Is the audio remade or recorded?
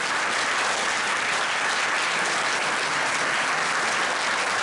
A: recorded